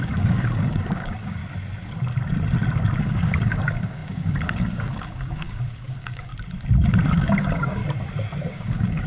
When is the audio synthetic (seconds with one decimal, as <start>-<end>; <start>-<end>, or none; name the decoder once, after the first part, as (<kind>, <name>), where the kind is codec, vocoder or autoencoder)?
0.0-1.4 (codec, DAC); 3.0-6.3; 7.1-7.8; 8.5-9.1